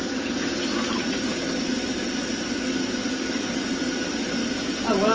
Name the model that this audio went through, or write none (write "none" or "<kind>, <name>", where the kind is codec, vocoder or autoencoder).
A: none